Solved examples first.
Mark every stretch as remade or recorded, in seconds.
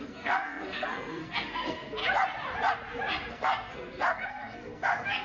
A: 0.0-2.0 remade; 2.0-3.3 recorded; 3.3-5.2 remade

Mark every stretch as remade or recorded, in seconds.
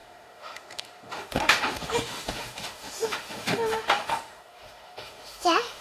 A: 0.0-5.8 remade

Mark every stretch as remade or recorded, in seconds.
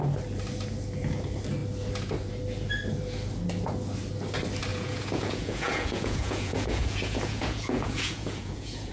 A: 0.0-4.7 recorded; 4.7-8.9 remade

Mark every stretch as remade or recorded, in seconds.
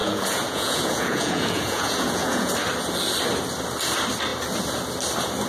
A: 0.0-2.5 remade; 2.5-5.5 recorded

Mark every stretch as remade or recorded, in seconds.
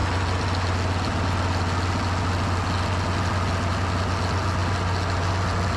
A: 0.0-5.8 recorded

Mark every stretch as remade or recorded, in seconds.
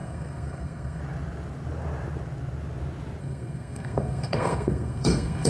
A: 0.0-1.0 remade; 1.0-3.2 recorded; 3.2-5.5 remade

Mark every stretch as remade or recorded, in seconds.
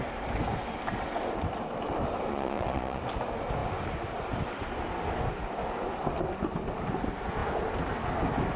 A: 0.0-2.3 recorded; 2.3-3.0 remade; 3.0-8.6 recorded